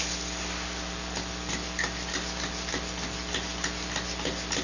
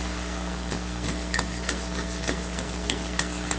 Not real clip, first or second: second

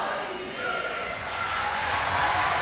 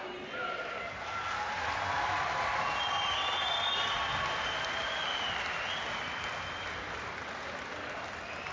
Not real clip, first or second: first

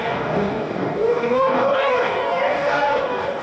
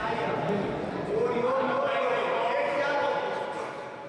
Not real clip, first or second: first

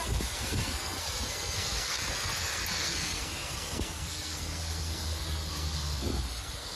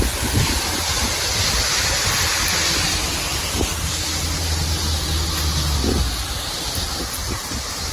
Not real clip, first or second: first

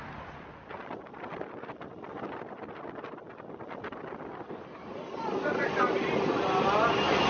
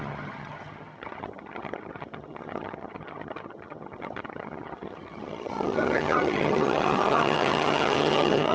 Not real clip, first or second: second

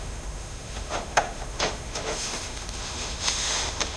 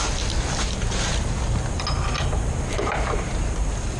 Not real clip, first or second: first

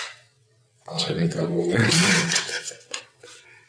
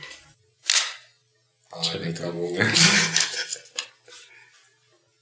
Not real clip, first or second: first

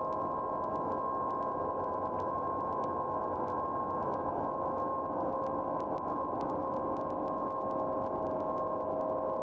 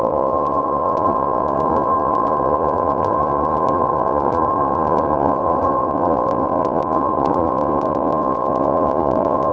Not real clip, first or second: second